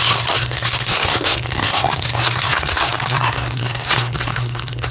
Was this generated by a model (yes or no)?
yes